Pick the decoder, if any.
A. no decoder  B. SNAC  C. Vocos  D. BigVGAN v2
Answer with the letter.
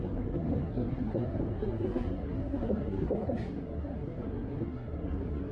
B